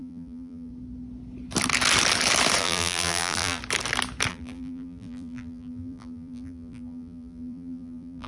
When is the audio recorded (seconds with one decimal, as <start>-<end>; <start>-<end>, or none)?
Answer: 0.7-2.6; 3.6-4.3